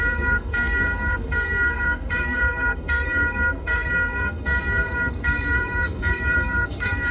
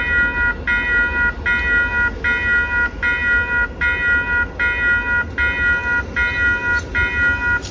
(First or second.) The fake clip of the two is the first